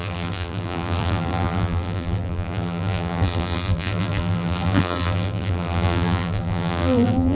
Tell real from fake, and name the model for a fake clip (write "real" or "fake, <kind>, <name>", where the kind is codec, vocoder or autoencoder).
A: fake, vocoder, BigVGAN v2